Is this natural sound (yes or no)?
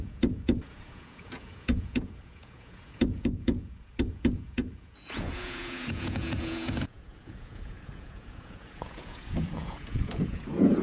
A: no